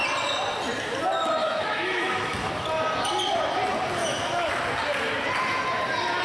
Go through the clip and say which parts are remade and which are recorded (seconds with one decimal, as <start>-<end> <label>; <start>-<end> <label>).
0.0-1.4 recorded; 1.4-2.5 remade; 2.5-4.0 recorded; 4.0-4.5 remade; 4.5-6.2 recorded